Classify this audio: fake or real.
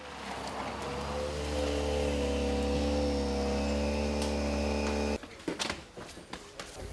real